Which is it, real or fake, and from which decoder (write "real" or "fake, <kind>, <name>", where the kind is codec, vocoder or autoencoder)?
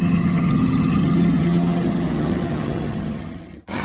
fake, vocoder, HiFi-GAN